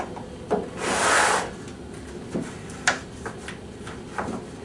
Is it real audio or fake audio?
real